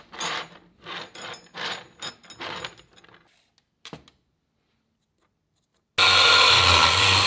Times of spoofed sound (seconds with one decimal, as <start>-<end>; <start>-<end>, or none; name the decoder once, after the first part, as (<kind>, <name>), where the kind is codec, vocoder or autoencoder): none